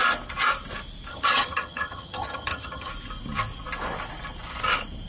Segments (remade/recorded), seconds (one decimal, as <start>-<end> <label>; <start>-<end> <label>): 0.0-1.1 recorded; 1.1-2.9 remade; 2.9-5.1 recorded